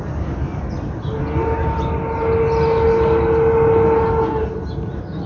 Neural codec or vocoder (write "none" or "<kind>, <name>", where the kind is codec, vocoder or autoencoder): none